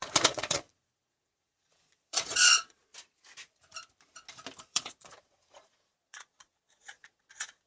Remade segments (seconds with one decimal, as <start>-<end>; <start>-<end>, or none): 0.0-2.9; 4.6-7.7